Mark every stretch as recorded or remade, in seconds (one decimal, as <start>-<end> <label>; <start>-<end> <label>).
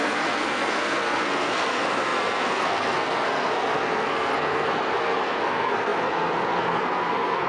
0.0-7.5 remade